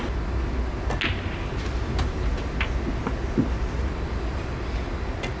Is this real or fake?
real